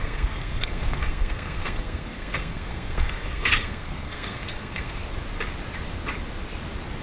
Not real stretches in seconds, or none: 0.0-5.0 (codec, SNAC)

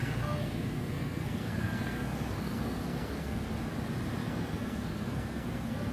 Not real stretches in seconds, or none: 0.0-3.5 (codec, SNAC); 4.2-5.9

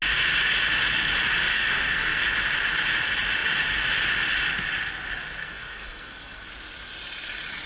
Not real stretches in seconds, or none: 1.5-2.2 (codec, SNAC); 5.4-6.5

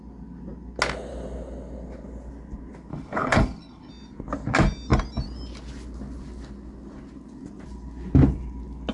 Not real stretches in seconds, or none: 2.9-3.9 (codec, HILCodec)

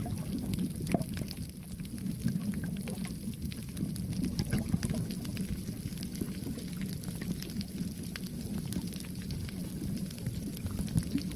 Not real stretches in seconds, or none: 9.6-11.4 (vocoder, BigVGAN v2)

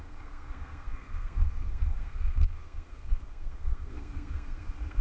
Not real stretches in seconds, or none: 0.0-5.0 (codec, SNAC)

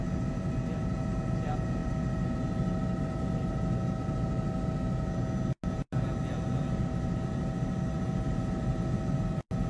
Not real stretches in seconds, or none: none